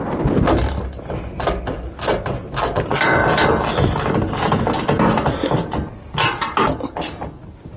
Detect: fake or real real